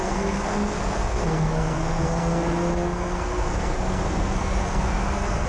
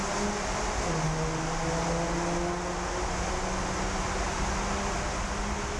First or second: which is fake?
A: first